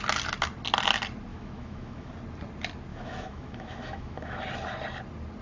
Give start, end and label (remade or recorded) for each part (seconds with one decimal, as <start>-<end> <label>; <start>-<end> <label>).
0.0-1.3 recorded; 1.3-2.1 remade; 2.1-2.9 recorded; 2.9-4.4 remade; 4.4-5.4 recorded